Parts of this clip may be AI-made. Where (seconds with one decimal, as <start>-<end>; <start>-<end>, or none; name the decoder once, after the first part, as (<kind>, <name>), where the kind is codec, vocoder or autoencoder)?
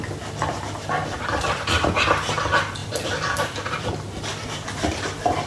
1.0-1.9 (vocoder, BigVGAN v2); 2.8-3.9